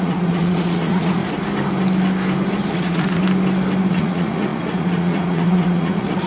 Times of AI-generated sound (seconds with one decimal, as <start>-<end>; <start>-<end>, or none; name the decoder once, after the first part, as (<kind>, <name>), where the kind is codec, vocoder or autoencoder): 0.0-1.2 (vocoder, Vocos); 2.7-3.2; 3.9-6.3